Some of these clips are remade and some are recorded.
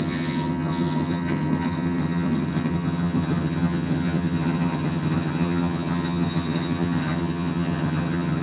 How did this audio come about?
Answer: remade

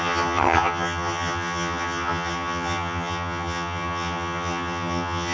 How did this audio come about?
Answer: remade